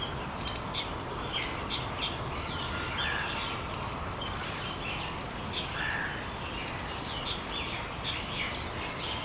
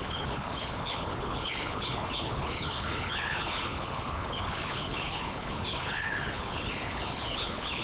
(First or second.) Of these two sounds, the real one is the first